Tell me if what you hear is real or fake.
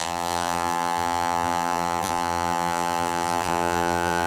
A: fake